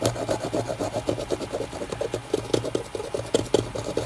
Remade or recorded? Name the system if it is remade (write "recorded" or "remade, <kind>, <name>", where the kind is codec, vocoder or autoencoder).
recorded